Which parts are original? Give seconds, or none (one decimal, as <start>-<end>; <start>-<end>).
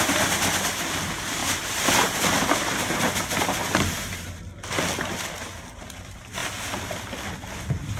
0.0-1.4; 3.6-8.0